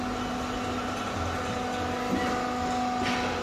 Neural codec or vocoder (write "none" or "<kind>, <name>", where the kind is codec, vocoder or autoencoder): none